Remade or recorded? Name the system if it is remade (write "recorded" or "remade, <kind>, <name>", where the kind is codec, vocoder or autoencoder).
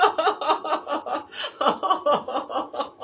recorded